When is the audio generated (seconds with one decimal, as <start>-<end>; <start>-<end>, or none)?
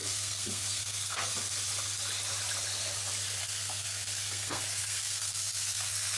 0.0-1.3; 3.4-6.2